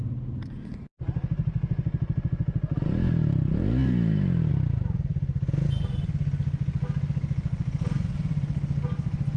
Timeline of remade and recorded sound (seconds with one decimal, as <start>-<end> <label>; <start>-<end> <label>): 0.0-9.4 recorded